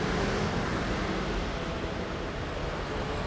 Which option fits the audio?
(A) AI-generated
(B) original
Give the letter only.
B